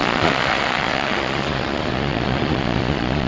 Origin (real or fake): fake